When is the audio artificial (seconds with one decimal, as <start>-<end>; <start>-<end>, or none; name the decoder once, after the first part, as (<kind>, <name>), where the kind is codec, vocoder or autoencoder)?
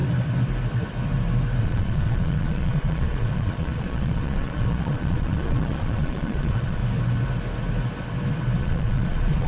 1.6-6.8 (vocoder, Vocos); 8.6-9.5